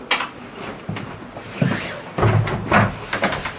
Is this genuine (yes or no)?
yes